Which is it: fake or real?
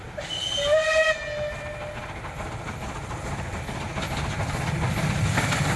real